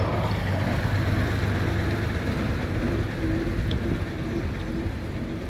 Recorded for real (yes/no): yes